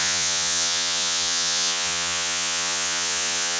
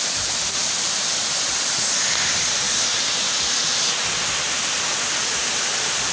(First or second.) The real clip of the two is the second